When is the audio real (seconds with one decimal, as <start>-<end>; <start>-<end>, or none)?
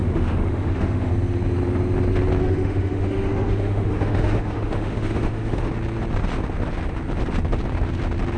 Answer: 1.1-2.4; 5.7-8.4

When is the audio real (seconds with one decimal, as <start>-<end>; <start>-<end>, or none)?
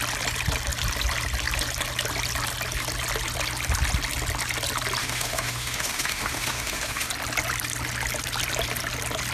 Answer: 0.0-5.0; 7.1-9.3